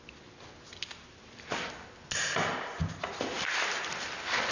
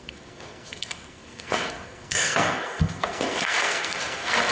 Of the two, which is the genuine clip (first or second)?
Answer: first